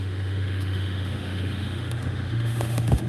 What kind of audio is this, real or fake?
fake